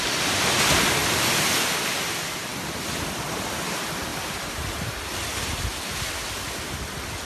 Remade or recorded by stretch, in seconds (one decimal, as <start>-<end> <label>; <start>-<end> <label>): 0.0-4.1 recorded; 4.1-4.9 remade; 4.9-7.2 recorded